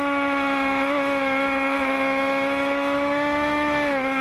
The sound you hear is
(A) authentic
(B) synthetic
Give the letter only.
B